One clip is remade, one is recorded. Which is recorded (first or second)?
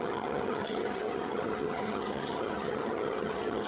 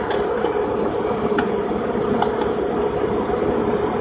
second